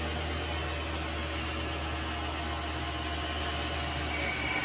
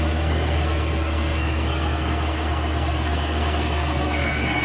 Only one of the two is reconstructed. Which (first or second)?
second